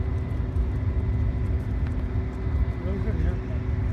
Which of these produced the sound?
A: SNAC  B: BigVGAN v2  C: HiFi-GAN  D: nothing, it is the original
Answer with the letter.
D